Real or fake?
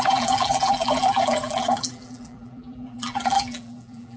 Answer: fake